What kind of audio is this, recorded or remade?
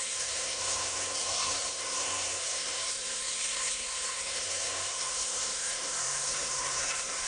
remade